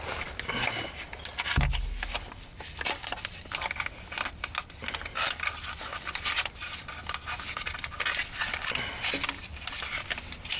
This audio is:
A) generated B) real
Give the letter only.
B